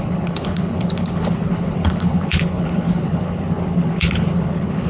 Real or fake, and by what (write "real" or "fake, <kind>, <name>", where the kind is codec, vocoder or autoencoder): fake, codec, HILCodec